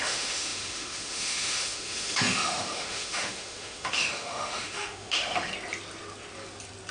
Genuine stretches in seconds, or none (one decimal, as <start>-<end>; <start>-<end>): 5.5-6.9